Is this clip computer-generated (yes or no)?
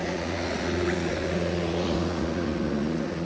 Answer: yes